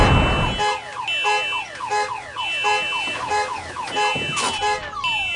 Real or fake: real